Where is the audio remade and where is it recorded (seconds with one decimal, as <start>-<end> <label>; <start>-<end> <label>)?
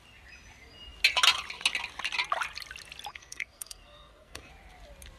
0.0-3.1 recorded; 3.1-4.5 remade; 4.5-5.2 recorded